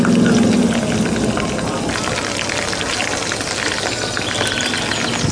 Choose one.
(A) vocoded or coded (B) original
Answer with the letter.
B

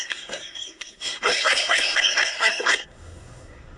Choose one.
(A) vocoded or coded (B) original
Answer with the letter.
A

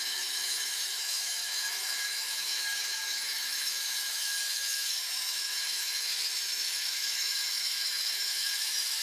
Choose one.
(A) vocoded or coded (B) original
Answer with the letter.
A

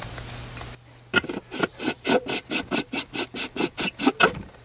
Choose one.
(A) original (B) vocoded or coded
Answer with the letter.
A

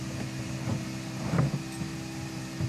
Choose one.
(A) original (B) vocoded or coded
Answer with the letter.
A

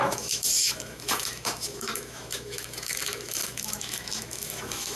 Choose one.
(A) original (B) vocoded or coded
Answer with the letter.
B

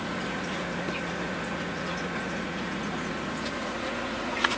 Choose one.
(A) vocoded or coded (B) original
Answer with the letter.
A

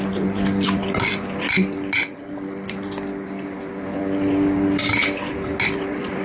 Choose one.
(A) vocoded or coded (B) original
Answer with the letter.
B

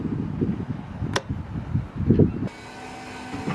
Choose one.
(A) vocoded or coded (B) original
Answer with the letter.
B